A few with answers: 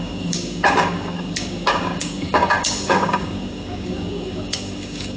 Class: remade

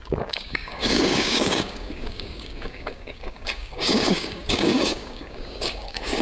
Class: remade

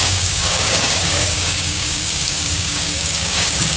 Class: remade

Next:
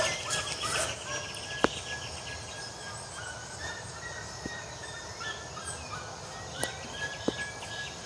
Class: recorded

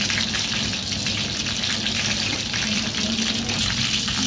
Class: recorded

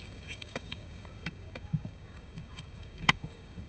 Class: remade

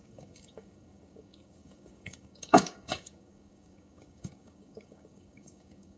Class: remade